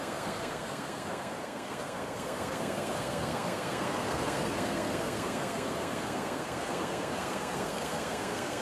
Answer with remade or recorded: remade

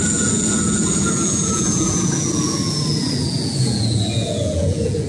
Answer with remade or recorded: remade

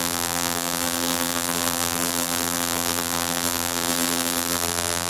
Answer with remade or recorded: remade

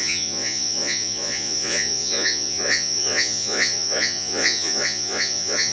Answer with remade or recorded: remade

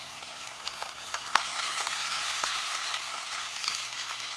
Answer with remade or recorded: remade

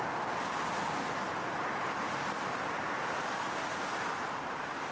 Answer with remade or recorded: recorded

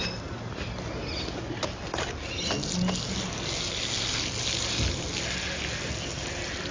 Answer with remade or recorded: recorded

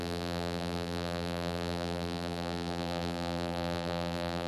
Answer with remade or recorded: remade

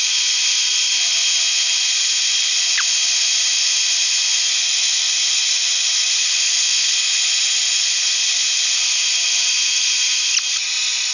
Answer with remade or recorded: recorded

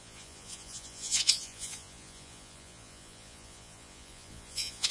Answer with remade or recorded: remade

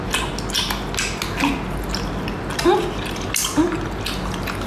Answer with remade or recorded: recorded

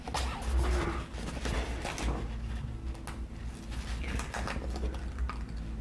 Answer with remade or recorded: recorded